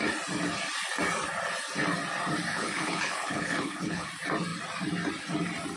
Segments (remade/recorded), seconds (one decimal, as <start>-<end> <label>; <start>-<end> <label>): 0.0-2.5 recorded; 2.5-4.1 remade; 4.1-5.8 recorded